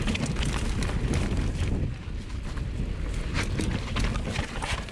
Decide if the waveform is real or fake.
real